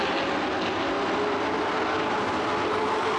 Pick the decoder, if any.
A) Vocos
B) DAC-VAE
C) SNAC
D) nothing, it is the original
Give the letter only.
D